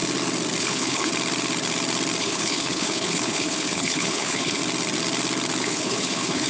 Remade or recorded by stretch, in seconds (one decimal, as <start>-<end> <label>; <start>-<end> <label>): 0.0-0.6 recorded; 0.6-1.1 remade; 1.1-2.2 recorded; 2.2-4.6 remade; 4.6-5.6 recorded; 5.6-6.5 remade

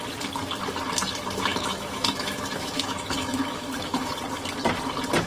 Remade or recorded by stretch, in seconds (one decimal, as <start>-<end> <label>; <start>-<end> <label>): 0.0-1.5 recorded; 1.5-4.1 remade; 4.1-5.3 recorded

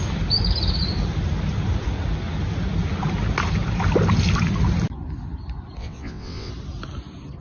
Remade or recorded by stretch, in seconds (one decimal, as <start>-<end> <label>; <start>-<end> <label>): 0.0-5.8 recorded; 5.8-6.5 remade; 6.5-7.4 recorded

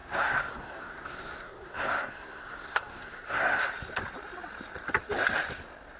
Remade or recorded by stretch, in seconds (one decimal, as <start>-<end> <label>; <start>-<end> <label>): 0.0-3.6 remade; 3.6-6.0 recorded

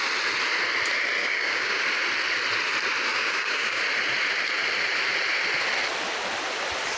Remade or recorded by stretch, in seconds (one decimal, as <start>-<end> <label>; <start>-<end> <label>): 0.0-1.2 recorded; 1.2-1.8 remade; 1.8-3.1 recorded; 3.1-3.8 remade; 3.8-7.0 recorded

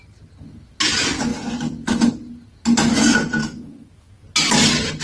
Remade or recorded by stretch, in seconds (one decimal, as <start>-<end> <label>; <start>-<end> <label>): 0.0-3.4 recorded; 3.4-4.2 remade; 4.2-5.0 recorded

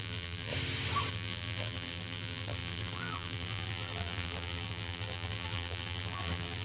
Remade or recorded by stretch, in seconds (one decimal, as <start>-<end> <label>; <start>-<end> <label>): 0.0-0.5 remade; 0.5-1.1 recorded; 1.1-6.6 remade

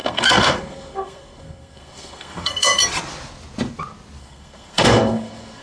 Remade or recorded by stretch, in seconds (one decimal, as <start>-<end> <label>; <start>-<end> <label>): 0.0-2.8 remade; 2.8-4.2 recorded; 4.2-5.6 remade